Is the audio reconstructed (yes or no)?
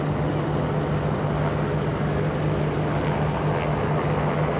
no